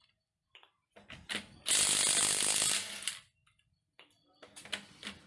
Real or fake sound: real